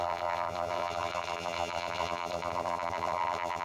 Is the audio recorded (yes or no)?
no